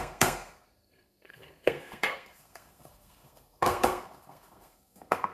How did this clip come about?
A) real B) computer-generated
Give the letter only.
B